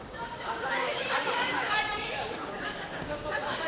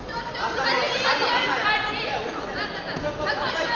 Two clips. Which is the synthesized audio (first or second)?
first